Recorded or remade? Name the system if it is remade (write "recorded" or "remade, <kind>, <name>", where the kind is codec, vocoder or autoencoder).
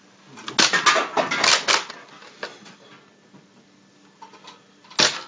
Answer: recorded